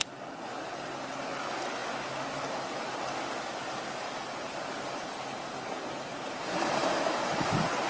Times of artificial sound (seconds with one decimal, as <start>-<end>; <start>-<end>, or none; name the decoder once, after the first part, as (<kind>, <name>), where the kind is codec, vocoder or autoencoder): none